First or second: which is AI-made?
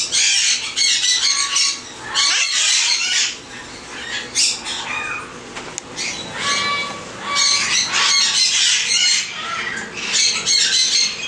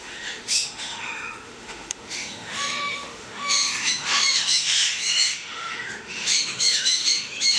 second